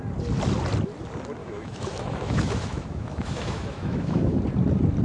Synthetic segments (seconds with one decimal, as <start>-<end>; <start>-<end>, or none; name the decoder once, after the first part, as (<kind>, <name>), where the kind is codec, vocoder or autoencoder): 1.4-4.4 (autoencoder, DAC-VAE)